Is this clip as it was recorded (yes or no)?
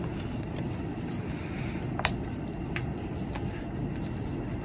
no